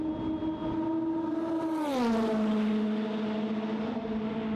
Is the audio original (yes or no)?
yes